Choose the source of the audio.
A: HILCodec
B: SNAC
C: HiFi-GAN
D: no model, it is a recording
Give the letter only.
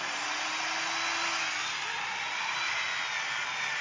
D